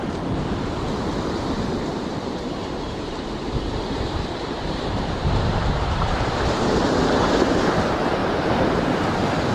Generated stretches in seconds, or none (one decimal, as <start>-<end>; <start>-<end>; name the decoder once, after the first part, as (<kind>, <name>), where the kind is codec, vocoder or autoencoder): 1.9-6.6 (vocoder, BigVGAN v2); 8.2-9.1